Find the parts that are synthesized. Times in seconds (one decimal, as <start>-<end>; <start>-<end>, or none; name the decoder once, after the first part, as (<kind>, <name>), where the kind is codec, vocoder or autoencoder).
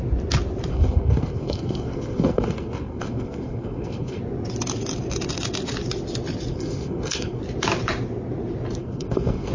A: 0.7-4.2 (codec, SNAC); 6.5-7.4; 8.8-9.5